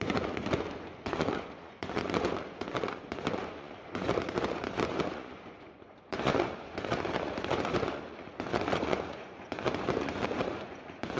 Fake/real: fake